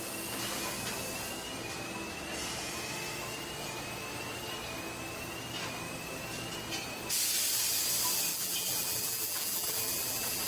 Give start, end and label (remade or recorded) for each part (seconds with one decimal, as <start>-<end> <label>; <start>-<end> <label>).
0.0-8.3 recorded; 8.3-10.5 remade

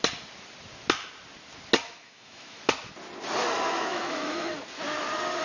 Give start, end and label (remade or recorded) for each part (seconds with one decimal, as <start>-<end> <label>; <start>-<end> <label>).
0.0-1.8 recorded; 1.8-2.6 remade; 2.6-3.9 recorded; 3.9-4.4 remade; 4.4-5.4 recorded

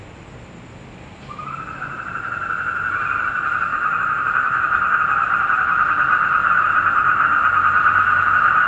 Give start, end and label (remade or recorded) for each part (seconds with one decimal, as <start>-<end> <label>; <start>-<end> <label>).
0.0-3.7 recorded; 3.7-5.0 remade; 5.0-8.7 recorded

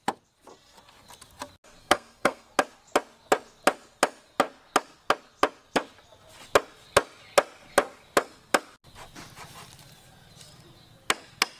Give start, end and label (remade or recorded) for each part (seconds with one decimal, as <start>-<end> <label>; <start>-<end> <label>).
0.0-1.8 recorded; 1.8-2.5 remade; 2.5-11.6 recorded

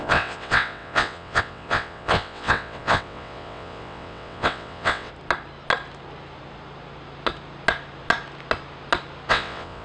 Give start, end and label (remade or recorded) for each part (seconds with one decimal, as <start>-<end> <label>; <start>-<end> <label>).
0.0-5.1 remade; 5.1-9.3 recorded; 9.3-9.8 remade

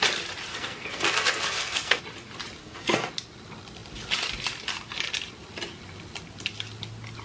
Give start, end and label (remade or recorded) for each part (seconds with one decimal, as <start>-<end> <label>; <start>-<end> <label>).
0.0-0.5 recorded; 0.5-2.0 remade; 2.0-2.6 recorded; 2.6-3.1 remade; 3.1-7.2 recorded